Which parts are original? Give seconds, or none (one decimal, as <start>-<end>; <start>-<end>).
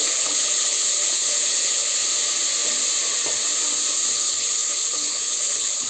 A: 2.0-4.1